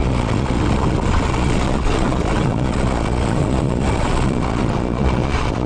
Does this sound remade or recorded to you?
remade